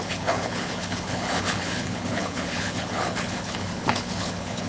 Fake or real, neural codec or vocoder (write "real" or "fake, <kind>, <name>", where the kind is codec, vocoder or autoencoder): fake, codec, HILCodec